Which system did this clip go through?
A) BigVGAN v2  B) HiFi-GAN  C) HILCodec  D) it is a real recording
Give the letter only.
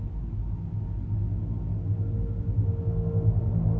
D